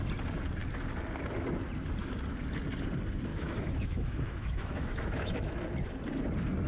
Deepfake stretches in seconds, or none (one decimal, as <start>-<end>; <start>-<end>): 3.3-5.6